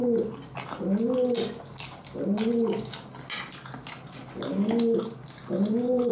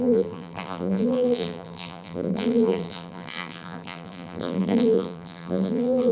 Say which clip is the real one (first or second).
first